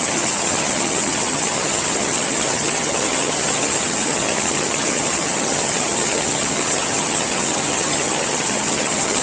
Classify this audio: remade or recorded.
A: remade